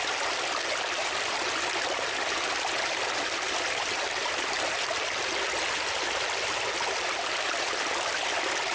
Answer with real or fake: real